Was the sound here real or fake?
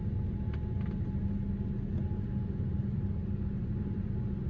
real